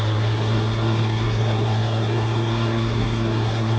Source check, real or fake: fake